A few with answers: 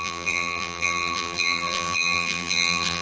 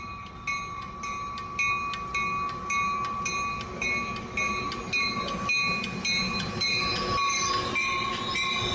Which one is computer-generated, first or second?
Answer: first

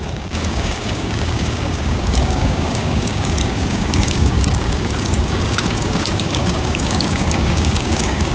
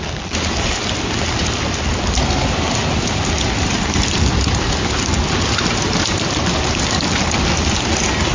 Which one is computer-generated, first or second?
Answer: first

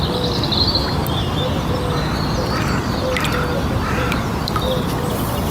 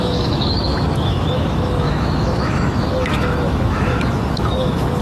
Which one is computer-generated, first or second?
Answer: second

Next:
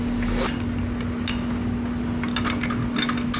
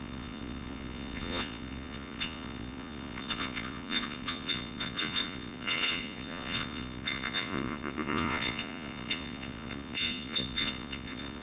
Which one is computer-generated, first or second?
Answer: second